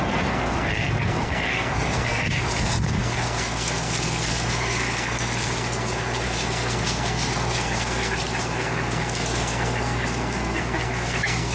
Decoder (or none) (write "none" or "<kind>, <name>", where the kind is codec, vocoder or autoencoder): codec, SNAC